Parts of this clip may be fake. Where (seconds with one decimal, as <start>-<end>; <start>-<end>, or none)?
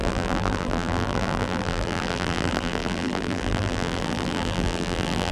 0.0-5.3